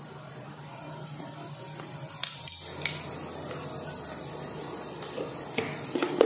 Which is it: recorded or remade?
recorded